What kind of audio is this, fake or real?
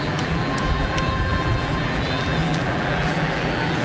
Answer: fake